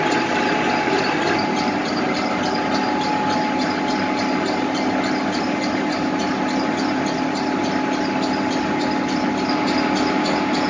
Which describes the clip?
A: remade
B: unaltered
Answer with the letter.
B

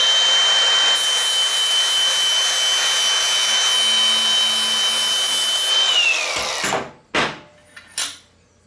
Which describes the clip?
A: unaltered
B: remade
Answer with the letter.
A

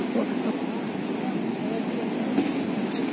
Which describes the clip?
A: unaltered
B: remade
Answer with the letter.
A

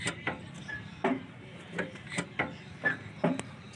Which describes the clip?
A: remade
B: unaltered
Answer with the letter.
B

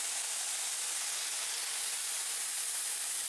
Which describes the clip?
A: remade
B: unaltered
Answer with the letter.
B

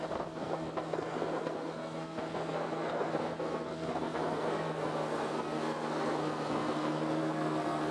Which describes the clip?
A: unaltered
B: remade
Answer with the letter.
B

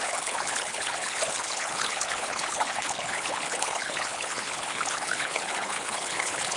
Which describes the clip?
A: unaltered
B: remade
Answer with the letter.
B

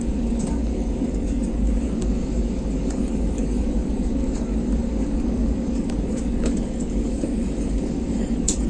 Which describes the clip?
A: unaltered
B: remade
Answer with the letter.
B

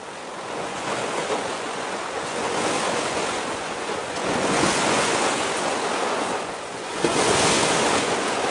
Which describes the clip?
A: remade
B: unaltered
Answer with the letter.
A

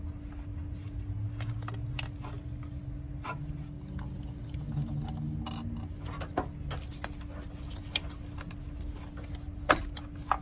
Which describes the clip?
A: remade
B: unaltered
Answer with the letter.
B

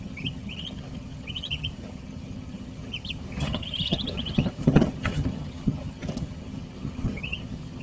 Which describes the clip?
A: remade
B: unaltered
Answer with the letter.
A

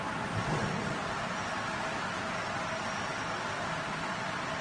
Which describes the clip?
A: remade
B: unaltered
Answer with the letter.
B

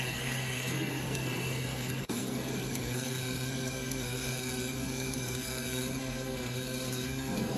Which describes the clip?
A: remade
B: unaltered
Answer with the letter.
A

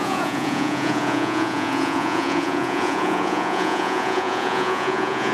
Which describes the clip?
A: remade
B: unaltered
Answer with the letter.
A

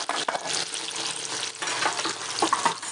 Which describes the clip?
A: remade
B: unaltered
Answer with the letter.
B